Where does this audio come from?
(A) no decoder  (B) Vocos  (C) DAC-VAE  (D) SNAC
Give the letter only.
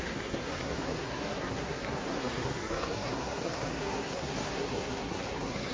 D